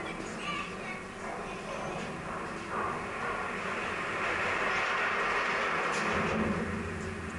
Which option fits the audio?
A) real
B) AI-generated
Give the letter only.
A